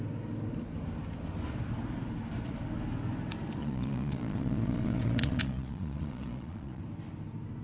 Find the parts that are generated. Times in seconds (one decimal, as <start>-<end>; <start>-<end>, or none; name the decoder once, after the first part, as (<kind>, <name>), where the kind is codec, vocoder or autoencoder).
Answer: 3.6-6.8 (vocoder, Vocos)